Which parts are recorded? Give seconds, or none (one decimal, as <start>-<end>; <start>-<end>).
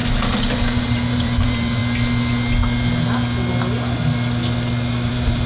0.0-0.8; 1.8-5.1